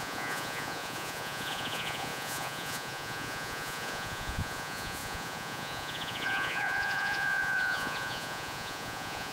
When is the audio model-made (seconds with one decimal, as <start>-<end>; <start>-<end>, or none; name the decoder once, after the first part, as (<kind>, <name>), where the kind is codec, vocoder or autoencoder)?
0.0-9.3 (vocoder, Vocos)